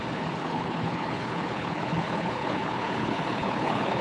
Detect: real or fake fake